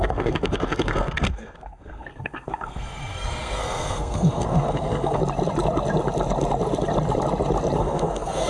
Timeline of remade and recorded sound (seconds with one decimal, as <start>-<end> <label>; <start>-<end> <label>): 0.0-5.2 remade; 5.2-7.8 recorded; 7.8-8.5 remade